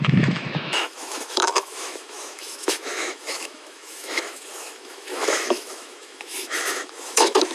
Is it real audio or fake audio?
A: fake